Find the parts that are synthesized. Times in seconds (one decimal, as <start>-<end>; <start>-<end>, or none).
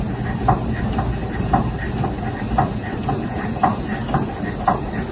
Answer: none